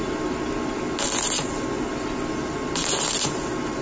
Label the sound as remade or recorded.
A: recorded